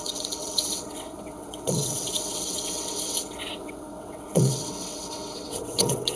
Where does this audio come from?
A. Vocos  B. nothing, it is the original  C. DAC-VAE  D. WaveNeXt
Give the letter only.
D